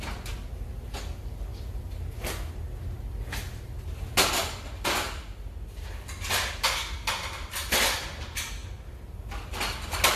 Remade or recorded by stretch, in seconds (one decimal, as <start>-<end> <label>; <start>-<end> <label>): 0.0-10.2 recorded